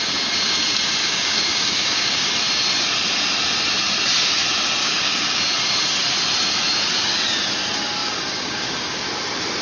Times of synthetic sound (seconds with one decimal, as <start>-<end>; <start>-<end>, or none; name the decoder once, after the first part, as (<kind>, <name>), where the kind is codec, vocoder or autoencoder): 1.0-2.3 (codec, DAC); 4.8-5.4; 8.0-9.0